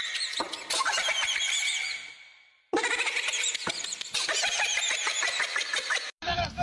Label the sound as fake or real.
real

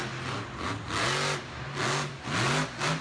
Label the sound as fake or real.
real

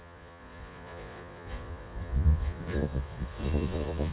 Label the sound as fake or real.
fake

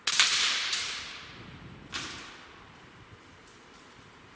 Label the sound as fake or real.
real